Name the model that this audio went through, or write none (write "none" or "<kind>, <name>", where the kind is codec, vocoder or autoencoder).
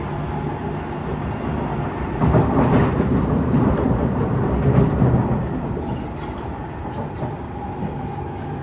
none